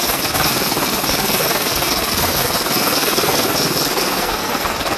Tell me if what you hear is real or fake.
fake